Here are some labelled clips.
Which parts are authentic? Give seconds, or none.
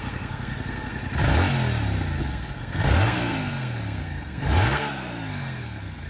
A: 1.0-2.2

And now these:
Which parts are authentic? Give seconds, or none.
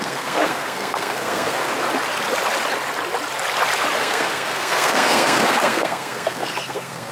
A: 1.7-4.0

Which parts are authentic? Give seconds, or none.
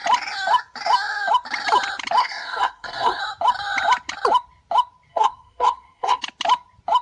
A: 0.0-2.2; 3.2-5.1; 6.2-7.0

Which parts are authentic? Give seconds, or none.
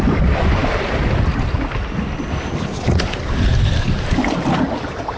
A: 0.0-5.2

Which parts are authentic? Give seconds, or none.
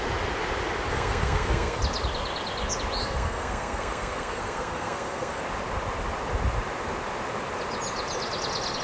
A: 0.0-0.9; 1.8-3.0; 5.4-8.8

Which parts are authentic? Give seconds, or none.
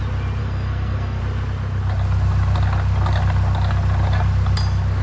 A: 0.0-0.4; 1.2-5.0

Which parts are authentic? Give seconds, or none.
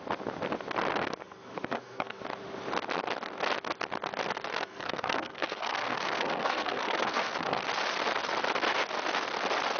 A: 0.0-1.2; 2.2-4.5; 7.6-9.8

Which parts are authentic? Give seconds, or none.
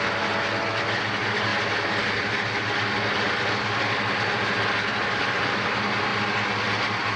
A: 0.0-7.2